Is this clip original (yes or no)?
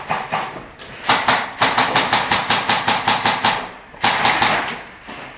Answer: yes